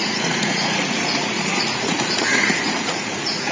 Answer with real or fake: fake